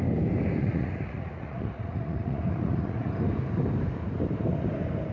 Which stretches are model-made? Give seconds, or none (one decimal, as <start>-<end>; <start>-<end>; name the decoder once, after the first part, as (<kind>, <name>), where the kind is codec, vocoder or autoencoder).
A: 0.6-3.1 (vocoder, Vocos)